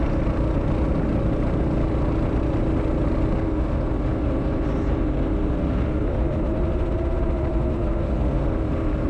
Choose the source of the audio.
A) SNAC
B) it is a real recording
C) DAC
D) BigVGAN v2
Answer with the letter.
B